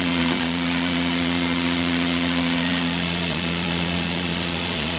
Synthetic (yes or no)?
yes